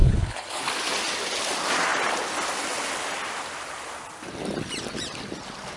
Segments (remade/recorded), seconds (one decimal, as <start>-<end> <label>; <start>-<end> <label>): 0.0-0.6 remade; 0.6-5.8 recorded